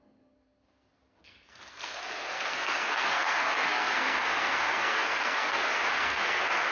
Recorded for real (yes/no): no